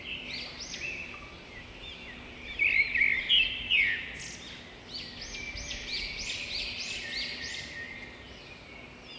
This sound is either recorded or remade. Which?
recorded